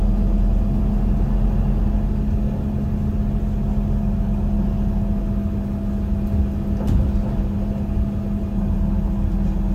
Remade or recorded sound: recorded